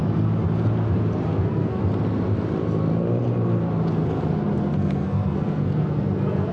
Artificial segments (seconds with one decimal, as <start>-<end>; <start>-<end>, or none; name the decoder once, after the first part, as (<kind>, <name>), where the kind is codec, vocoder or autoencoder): 1.3-1.8 (codec, SNAC); 4.5-6.5